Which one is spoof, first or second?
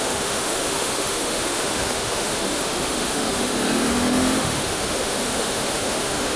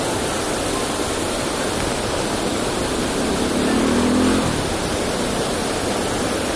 first